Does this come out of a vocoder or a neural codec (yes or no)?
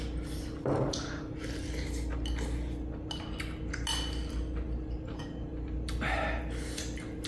no